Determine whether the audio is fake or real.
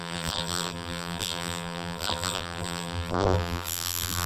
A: fake